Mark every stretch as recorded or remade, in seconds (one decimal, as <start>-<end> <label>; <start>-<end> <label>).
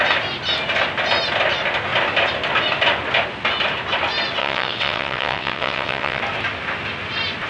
0.0-4.4 recorded; 4.4-6.2 remade; 6.2-7.5 recorded